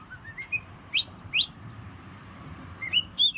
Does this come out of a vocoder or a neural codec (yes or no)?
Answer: yes